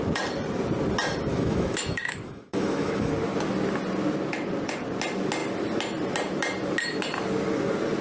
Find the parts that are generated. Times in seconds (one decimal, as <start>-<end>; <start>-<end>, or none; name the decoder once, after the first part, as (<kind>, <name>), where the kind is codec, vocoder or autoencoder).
1.3-3.1 (autoencoder, DAC-VAE)